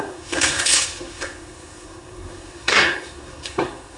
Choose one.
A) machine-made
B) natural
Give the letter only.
A